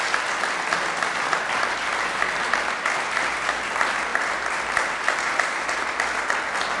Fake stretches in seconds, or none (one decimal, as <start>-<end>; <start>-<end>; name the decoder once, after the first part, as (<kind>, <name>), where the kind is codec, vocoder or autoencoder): 4.1-5.6 (vocoder, BigVGAN v2)